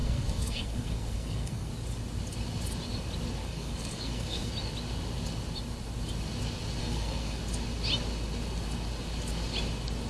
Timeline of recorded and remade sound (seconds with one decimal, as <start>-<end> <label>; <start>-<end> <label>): 0.0-1.7 remade; 1.7-3.4 recorded; 3.4-4.5 remade; 4.5-6.8 recorded; 6.8-7.4 remade; 7.4-10.1 recorded